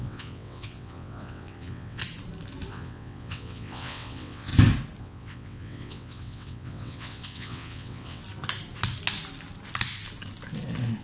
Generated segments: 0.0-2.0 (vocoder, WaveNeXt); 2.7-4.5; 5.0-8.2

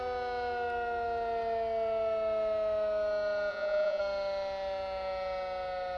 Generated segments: 3.5-4.0 (vocoder, Vocos)

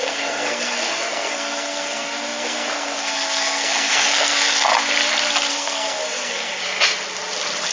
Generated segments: 0.0-4.7 (codec, SNAC); 5.5-6.6

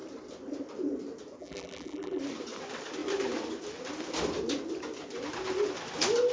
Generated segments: 1.4-2.2 (vocoder, BigVGAN v2)

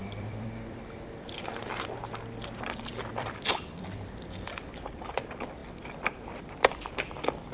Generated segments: 0.0-7.5 (vocoder, BigVGAN v2)

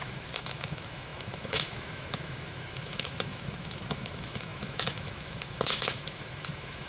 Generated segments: 0.0-6.9 (autoencoder, DAC-VAE)

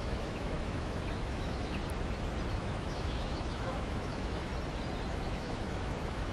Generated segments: 0.0-1.8 (autoencoder, DAC-VAE); 2.5-4.5; 5.1-6.3